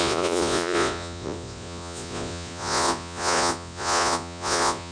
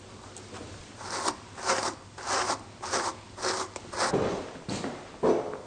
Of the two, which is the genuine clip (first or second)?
second